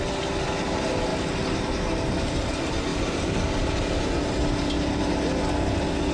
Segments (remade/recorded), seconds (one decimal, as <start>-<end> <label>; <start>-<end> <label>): 0.0-6.1 recorded